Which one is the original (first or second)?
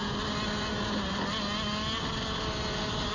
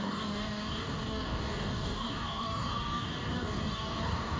first